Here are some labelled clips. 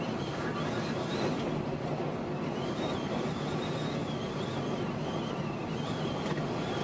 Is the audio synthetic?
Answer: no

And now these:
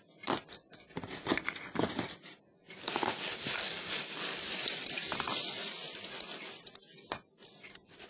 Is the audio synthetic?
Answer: yes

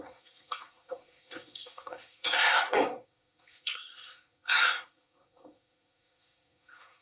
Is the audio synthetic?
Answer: yes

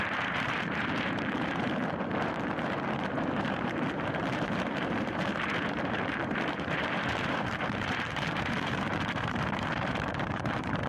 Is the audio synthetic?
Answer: yes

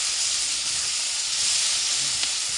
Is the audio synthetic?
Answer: no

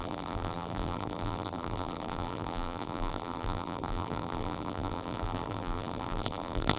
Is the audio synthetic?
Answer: yes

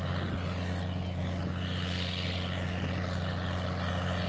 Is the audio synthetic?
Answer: no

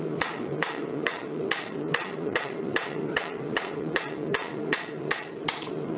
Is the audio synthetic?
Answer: yes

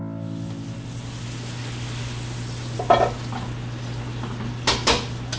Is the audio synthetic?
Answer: no